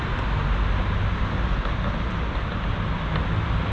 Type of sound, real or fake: real